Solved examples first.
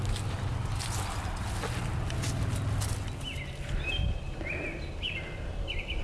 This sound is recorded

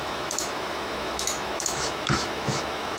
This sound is remade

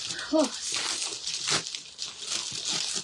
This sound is recorded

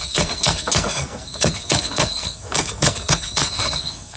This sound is remade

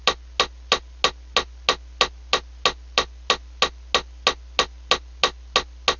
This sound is recorded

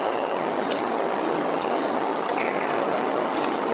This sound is remade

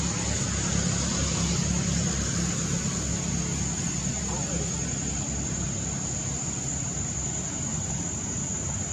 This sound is recorded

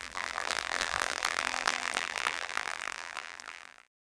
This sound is remade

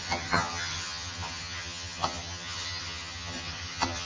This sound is remade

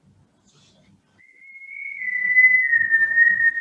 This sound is recorded